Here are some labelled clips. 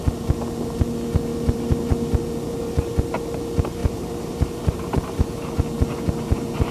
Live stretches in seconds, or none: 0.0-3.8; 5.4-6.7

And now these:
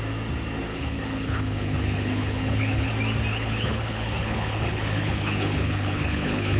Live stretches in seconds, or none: 0.0-0.7; 2.9-3.3

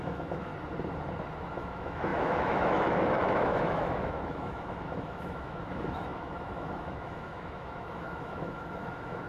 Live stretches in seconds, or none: 0.5-1.5

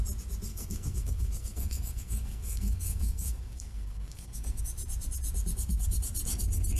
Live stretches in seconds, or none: 0.0-0.5; 4.6-6.8

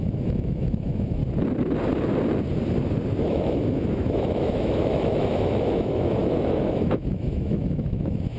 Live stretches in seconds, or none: 1.2-3.2

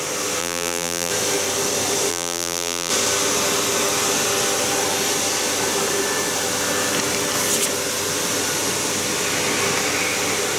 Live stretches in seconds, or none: 0.0-0.4; 1.1-2.1; 2.9-10.6

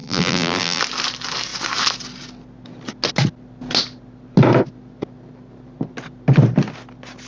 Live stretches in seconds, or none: 0.8-7.3

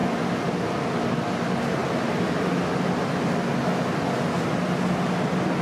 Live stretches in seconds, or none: 0.0-5.6